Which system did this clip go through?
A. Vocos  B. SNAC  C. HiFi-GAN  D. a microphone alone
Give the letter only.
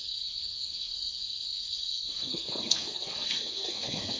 B